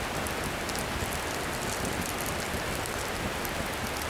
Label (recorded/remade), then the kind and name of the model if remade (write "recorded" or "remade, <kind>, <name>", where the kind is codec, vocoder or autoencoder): recorded